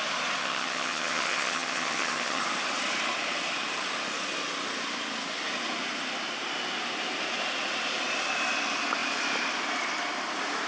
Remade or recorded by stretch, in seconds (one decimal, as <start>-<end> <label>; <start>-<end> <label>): 0.0-0.4 recorded; 0.4-2.4 remade; 2.4-10.7 recorded